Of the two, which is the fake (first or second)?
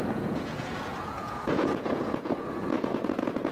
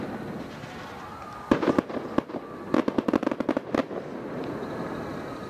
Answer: first